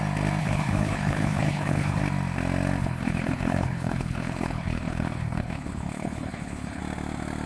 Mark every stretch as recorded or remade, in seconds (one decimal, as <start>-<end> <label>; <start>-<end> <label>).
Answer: 0.0-0.4 recorded; 0.4-2.0 remade; 2.0-2.8 recorded; 2.8-6.8 remade; 6.8-7.5 recorded